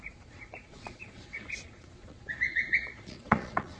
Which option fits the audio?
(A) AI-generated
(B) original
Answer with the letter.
A